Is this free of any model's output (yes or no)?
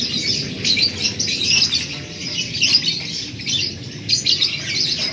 yes